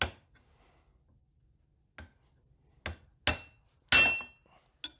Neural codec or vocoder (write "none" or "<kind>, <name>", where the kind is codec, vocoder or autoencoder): none